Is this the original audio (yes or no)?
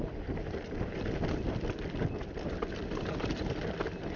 yes